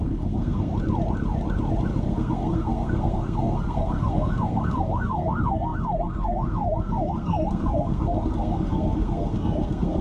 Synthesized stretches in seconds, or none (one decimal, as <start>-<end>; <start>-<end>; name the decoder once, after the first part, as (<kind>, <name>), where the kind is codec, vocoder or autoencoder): 0.0-0.7 (codec, SNAC); 2.0-10.0